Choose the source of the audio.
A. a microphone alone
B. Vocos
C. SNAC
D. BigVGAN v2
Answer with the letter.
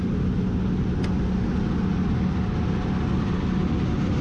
A